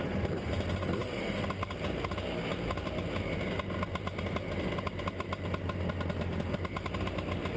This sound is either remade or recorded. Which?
recorded